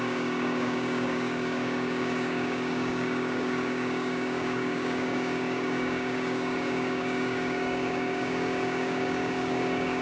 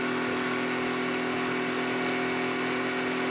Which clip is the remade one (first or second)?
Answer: first